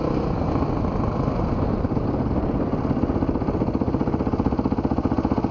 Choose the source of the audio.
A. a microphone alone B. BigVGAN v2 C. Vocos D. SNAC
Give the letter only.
A